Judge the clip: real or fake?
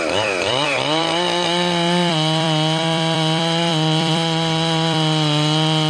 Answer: fake